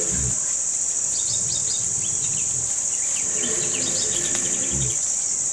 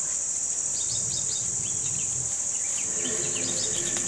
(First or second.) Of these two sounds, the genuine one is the second